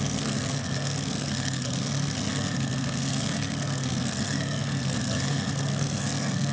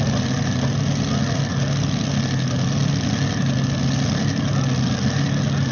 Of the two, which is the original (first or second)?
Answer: second